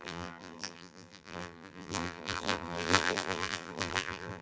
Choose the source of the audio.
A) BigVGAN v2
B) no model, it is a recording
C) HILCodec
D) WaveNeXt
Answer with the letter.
A